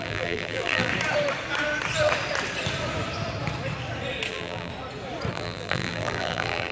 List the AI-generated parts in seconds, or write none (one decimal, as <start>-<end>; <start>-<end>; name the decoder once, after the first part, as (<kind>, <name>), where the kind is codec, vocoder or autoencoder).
0.0-0.9 (vocoder, BigVGAN v2); 4.3-4.7; 5.3-6.7